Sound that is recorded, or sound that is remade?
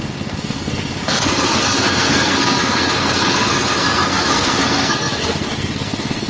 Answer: remade